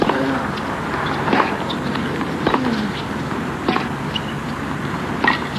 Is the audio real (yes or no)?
yes